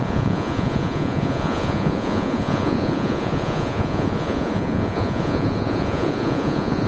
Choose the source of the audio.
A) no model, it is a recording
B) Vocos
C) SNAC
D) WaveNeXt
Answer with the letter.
B